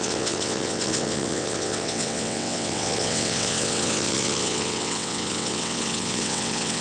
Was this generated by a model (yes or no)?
yes